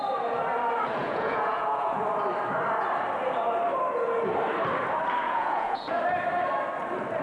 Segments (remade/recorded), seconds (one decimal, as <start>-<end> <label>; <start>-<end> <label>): 0.0-1.0 recorded; 1.0-2.0 remade; 2.0-5.2 recorded; 5.2-6.0 remade; 6.0-7.2 recorded

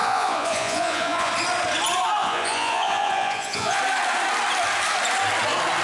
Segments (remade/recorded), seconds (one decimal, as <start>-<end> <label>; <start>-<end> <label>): 0.0-1.3 remade; 1.3-2.2 recorded; 2.2-3.8 remade; 3.8-5.8 recorded

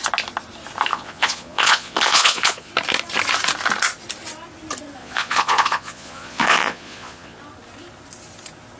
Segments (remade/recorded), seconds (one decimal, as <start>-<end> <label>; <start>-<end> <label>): 0.0-0.9 recorded; 0.9-2.7 remade; 2.7-5.0 recorded; 5.0-7.4 remade; 7.4-8.8 recorded

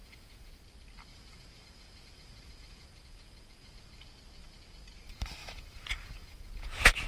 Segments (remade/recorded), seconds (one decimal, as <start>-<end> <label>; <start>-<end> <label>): 0.0-0.5 remade; 0.5-1.1 recorded; 1.1-3.7 remade; 3.7-5.4 recorded; 5.4-7.1 remade

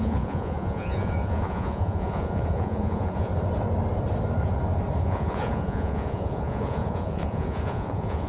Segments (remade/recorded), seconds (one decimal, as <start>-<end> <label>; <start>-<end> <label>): 0.0-3.3 remade; 3.3-5.0 recorded; 5.0-8.3 remade

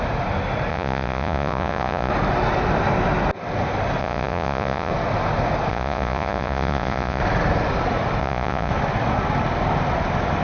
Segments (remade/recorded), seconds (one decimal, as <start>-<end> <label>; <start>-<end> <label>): 0.0-0.7 recorded; 0.7-2.1 remade; 2.1-4.0 recorded; 4.0-4.9 remade; 4.9-5.7 recorded; 5.7-7.2 remade; 7.2-8.2 recorded; 8.2-8.7 remade; 8.7-10.4 recorded